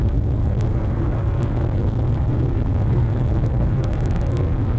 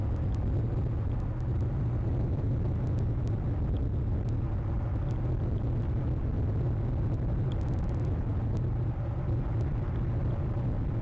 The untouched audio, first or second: second